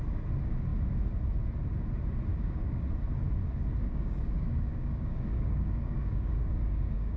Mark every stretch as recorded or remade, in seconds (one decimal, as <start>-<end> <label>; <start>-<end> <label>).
0.0-2.3 recorded; 2.3-2.9 remade; 2.9-3.8 recorded; 3.8-7.2 remade